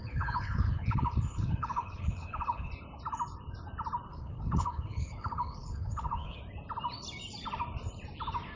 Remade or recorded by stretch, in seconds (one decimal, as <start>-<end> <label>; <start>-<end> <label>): 0.0-2.7 remade; 2.7-4.1 recorded; 4.1-6.4 remade; 6.4-8.6 recorded